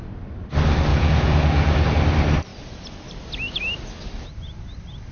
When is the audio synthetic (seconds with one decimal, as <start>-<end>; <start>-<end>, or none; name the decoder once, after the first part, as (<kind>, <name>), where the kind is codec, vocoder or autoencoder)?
0.9-1.9 (vocoder, Vocos)